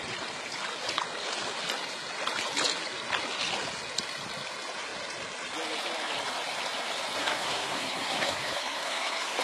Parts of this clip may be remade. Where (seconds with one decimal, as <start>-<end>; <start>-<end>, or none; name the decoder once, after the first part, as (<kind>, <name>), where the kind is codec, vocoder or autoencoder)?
7.2-9.4 (codec, SNAC)